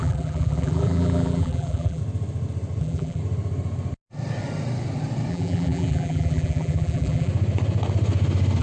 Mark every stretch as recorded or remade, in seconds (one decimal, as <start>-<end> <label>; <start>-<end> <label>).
0.0-2.0 remade; 2.0-2.8 recorded; 2.8-3.2 remade; 3.2-5.3 recorded; 5.3-7.3 remade; 7.3-8.6 recorded